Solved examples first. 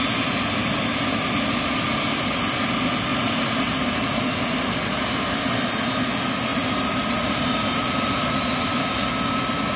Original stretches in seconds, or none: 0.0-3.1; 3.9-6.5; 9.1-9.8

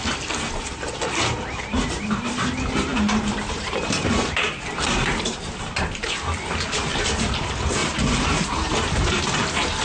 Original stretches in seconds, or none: 0.0-1.7; 2.3-2.9; 4.1-7.8; 9.2-9.8

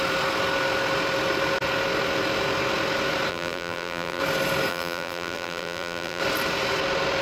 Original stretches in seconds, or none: 0.0-3.3; 4.2-4.7; 6.2-7.2